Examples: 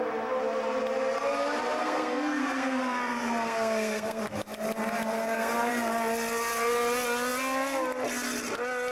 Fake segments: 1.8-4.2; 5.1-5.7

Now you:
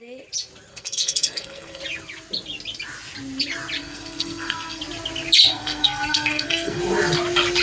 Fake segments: 0.7-1.8; 3.8-4.8; 5.5-6.8

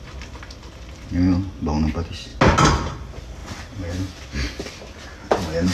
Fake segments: none

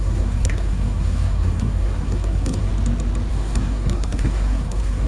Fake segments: 0.0-2.7; 3.3-5.1

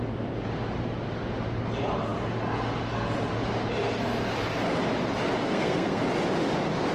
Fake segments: 5.4-6.0

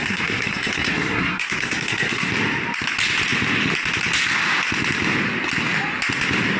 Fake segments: 0.0-2.3

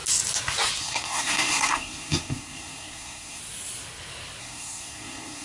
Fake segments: 0.8-3.4; 4.4-5.4

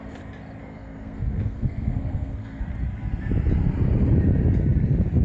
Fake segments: 0.6-2.6